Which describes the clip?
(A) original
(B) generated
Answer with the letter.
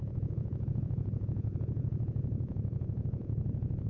B